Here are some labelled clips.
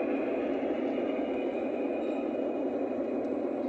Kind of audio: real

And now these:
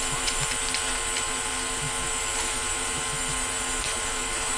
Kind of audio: fake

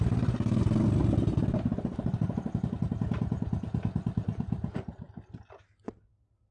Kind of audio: real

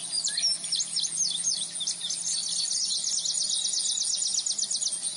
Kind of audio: real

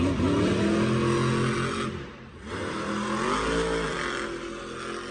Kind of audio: real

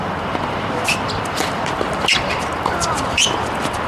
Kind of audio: fake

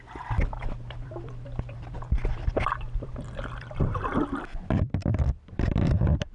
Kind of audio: fake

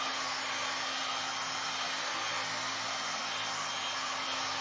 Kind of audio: real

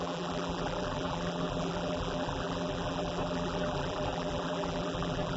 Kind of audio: fake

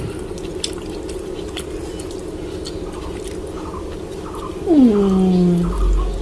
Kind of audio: real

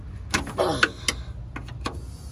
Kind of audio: real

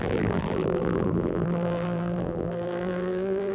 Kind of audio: fake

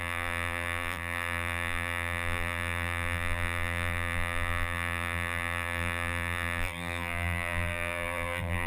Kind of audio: fake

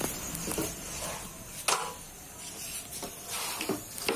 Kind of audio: real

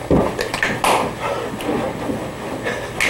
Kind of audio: real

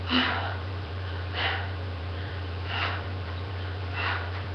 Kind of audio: fake